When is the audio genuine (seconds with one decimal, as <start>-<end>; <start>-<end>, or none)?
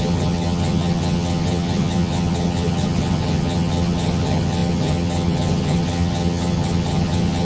none